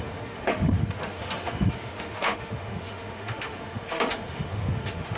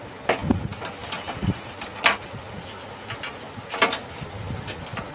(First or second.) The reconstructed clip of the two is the first